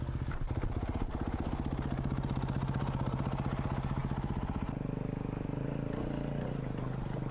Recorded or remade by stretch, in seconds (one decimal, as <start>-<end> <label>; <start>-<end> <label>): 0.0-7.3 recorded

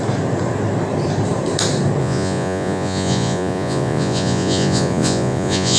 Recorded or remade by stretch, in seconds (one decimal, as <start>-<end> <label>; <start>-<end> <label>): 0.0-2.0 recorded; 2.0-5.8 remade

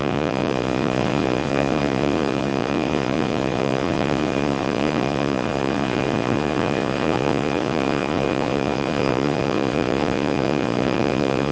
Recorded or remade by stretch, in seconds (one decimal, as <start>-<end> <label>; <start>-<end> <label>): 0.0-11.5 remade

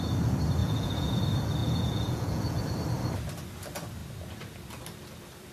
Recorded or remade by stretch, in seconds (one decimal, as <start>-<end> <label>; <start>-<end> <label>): 0.0-0.6 recorded; 0.6-1.2 remade; 1.2-1.6 recorded; 1.6-2.6 remade; 2.6-5.5 recorded

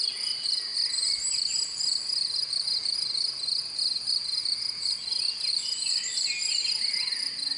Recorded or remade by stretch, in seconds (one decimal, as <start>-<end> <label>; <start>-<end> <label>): 0.0-7.6 recorded